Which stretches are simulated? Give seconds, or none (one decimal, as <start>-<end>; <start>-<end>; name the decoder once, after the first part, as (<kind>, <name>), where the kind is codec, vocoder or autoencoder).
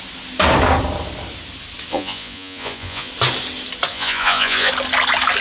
1.9-3.1 (vocoder, Vocos); 3.9-4.7